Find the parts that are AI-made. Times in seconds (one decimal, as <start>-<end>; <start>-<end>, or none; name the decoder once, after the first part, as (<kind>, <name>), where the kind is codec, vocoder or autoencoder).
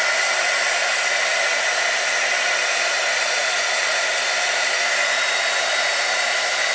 0.0-6.7 (vocoder, BigVGAN v2)